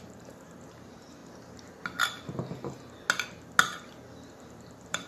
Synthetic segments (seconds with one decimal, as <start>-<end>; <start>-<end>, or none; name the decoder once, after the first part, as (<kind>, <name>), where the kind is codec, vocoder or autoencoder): 0.0-1.2 (vocoder, BigVGAN v2); 4.3-5.1